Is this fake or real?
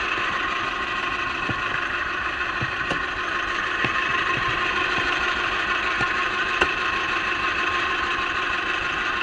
fake